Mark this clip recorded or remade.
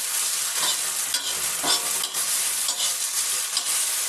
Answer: recorded